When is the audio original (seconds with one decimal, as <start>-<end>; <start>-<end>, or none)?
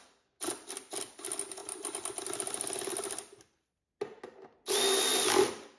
0.0-5.8